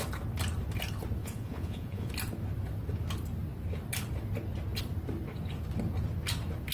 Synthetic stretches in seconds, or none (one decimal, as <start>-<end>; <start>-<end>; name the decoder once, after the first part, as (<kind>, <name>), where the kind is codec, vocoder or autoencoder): 1.2-2.1 (vocoder, Vocos)